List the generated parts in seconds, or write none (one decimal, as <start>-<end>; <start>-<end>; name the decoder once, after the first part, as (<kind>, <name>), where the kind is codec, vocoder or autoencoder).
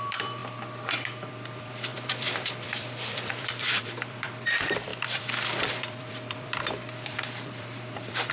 0.0-0.4 (vocoder, BigVGAN v2); 1.3-8.3